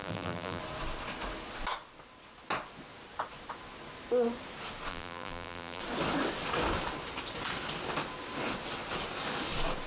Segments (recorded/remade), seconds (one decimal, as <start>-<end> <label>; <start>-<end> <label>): 0.0-0.6 remade; 0.6-4.9 recorded; 4.9-5.8 remade; 5.8-9.9 recorded